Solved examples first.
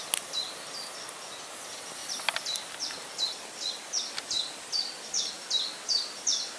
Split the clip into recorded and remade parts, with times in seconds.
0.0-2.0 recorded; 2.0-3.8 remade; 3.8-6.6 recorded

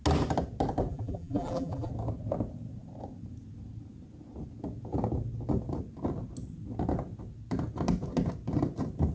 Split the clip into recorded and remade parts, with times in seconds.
0.0-0.9 recorded; 0.9-1.9 remade; 1.9-9.1 recorded

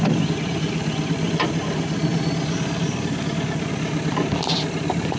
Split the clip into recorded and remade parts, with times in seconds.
0.0-5.2 recorded

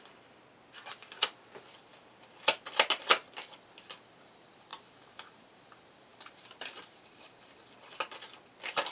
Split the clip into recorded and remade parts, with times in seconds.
0.0-4.7 recorded; 4.7-5.6 remade; 5.6-6.1 recorded; 6.1-7.6 remade; 7.6-8.9 recorded

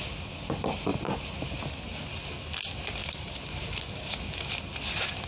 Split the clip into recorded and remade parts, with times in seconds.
0.0-3.0 recorded; 3.0-3.8 remade; 3.8-5.3 recorded

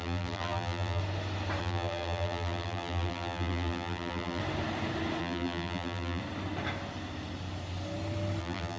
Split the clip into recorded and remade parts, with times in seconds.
0.0-1.0 remade; 1.0-1.6 recorded; 1.6-4.4 remade; 4.4-5.2 recorded; 5.2-6.2 remade; 6.2-8.4 recorded; 8.4-8.8 remade